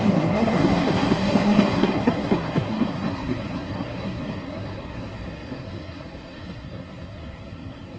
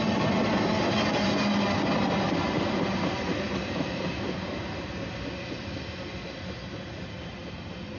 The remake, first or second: first